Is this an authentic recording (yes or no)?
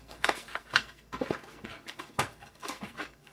no